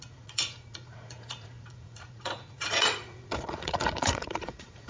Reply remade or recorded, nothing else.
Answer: remade